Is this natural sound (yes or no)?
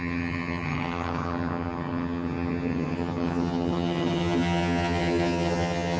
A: no